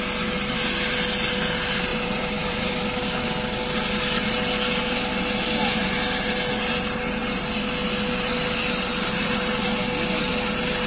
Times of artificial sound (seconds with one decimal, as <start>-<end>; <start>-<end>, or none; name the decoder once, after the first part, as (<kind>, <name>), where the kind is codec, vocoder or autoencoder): 1.9-2.7 (vocoder, BigVGAN v2)